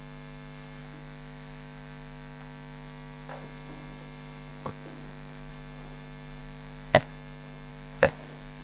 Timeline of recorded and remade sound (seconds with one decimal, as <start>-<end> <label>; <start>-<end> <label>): 0.0-0.8 recorded; 0.8-3.3 remade; 3.3-4.5 recorded; 4.5-5.5 remade; 5.5-6.4 recorded; 6.4-7.1 remade; 7.1-7.7 recorded; 7.7-8.6 remade